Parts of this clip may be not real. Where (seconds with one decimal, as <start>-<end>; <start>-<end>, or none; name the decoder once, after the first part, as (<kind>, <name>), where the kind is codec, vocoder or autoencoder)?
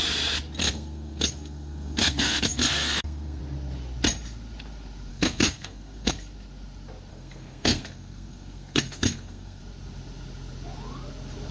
0.6-3.4 (codec, SNAC); 5.1-6.1; 7.1-9.6